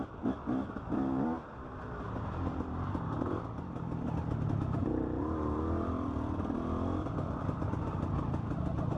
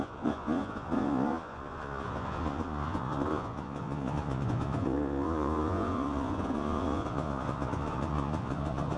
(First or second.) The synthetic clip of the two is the second